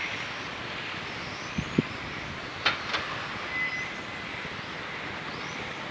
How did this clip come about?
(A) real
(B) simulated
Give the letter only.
A